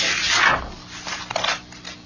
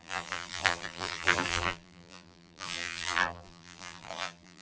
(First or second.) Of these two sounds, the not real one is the second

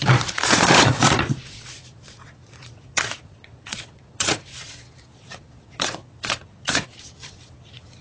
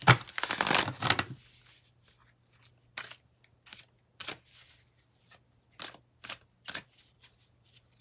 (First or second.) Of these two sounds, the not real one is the first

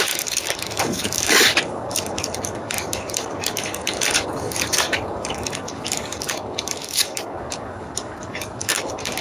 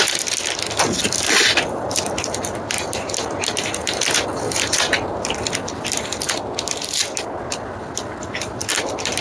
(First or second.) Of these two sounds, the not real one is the first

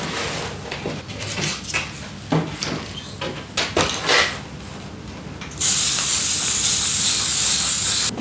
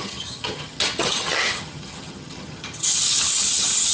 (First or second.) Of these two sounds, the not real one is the second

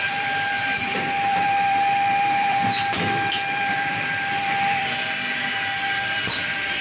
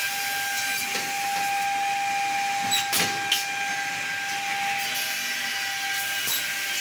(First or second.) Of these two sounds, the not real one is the first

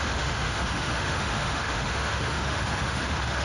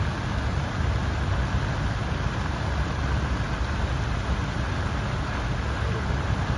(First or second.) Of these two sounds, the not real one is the first